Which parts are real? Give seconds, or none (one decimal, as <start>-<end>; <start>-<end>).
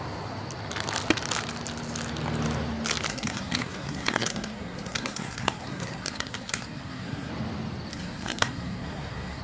0.0-3.1; 7.3-7.9